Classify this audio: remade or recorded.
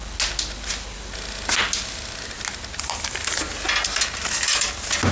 recorded